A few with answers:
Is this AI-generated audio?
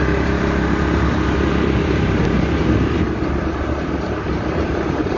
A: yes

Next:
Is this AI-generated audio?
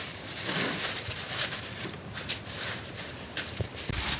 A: yes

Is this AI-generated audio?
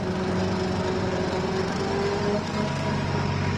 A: no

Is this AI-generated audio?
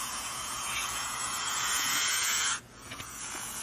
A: yes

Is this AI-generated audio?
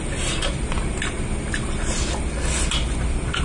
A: no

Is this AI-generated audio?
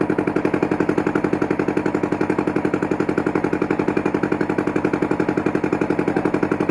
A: no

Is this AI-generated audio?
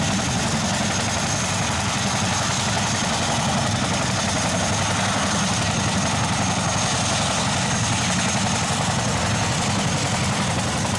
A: no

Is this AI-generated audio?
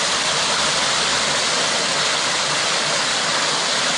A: no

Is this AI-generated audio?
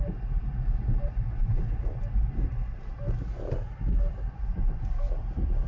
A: no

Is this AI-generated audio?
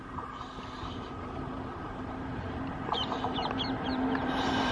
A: yes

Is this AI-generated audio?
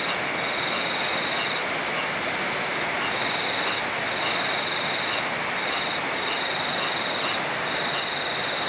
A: no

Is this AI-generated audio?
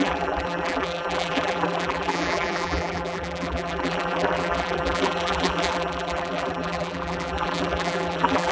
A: yes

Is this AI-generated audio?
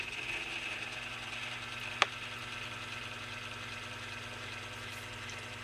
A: no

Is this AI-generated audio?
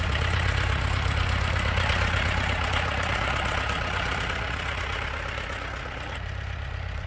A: yes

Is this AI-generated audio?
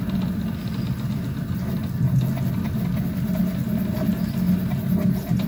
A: no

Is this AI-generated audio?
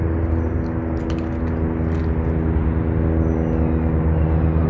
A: no